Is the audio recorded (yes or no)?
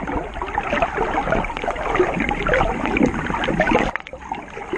yes